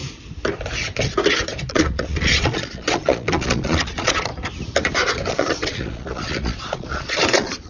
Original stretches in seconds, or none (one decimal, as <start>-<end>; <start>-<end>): 0.0-1.7; 4.3-5.3